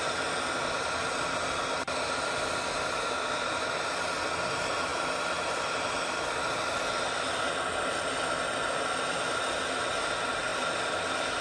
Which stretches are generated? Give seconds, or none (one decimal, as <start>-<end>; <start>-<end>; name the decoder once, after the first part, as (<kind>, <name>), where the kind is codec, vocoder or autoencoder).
none